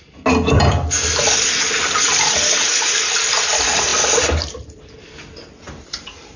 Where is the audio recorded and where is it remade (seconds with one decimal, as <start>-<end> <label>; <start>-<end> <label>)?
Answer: 0.0-6.4 recorded